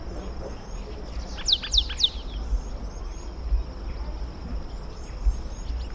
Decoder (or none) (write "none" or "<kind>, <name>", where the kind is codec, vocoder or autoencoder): none